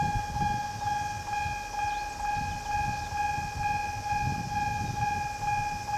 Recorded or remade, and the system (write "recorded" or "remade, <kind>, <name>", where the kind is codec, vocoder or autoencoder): recorded